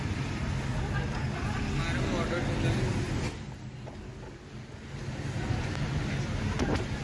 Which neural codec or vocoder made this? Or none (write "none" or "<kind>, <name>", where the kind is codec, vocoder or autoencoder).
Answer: none